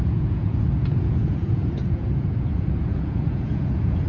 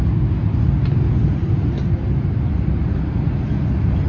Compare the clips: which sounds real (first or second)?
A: second